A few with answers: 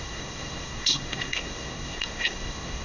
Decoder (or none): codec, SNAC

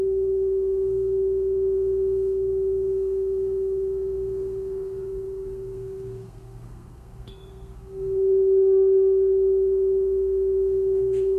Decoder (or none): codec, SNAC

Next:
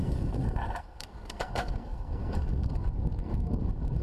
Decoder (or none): codec, SNAC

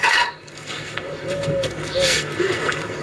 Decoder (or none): codec, SNAC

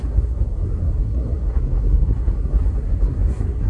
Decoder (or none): codec, SNAC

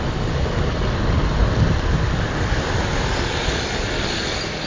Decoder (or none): none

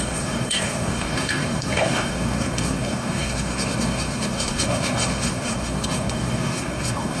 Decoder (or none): codec, SNAC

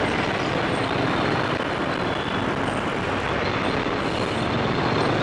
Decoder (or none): none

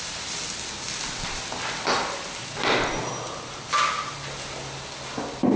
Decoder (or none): none